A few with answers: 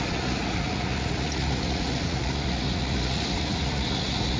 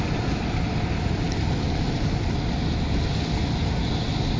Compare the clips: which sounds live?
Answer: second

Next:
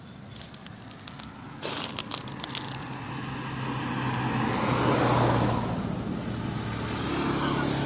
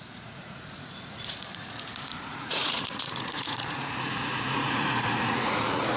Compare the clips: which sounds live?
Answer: first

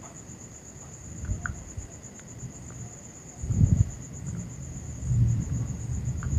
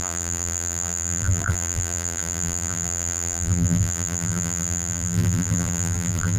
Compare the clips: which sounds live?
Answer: first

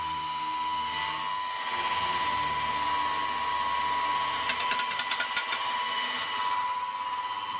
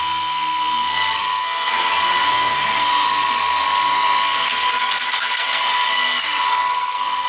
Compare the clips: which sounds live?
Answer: first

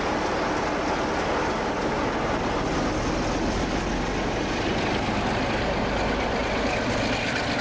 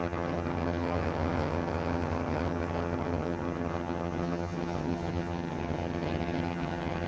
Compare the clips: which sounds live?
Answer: first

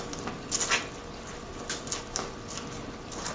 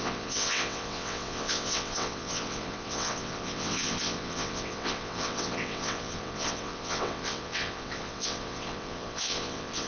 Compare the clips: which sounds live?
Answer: first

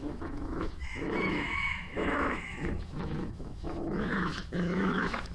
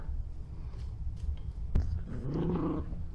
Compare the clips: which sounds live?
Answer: second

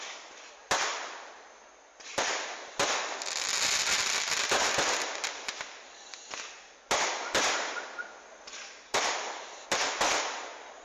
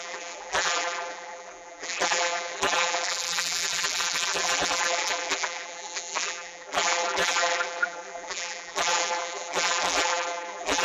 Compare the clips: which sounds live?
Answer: first